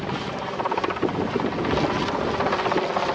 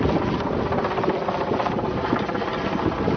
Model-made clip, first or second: second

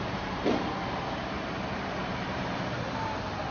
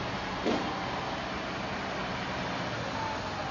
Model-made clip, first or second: first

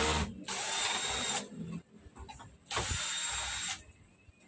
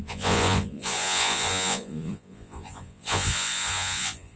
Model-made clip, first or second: second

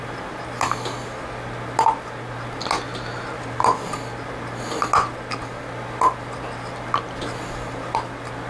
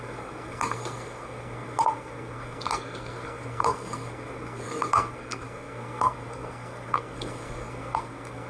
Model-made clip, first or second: second